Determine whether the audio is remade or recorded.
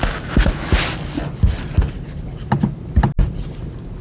recorded